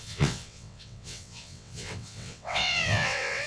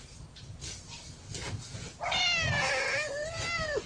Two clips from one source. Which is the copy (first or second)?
first